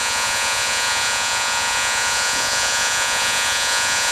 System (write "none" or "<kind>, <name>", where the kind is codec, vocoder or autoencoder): vocoder, Vocos